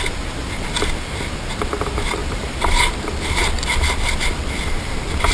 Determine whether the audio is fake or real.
real